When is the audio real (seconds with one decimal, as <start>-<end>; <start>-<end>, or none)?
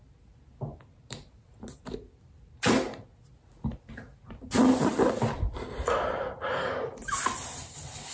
0.0-8.1